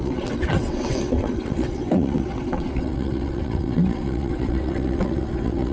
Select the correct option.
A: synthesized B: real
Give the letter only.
A